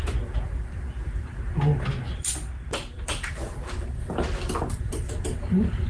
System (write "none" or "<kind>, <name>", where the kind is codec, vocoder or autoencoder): vocoder, BigVGAN v2